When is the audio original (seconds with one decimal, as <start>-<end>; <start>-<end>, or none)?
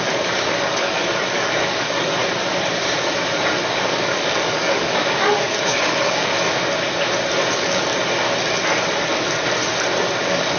2.2-3.7; 6.3-7.5; 7.9-10.2